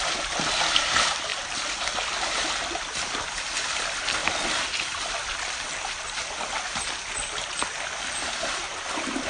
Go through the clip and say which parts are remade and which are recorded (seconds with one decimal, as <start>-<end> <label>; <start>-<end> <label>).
0.0-9.3 recorded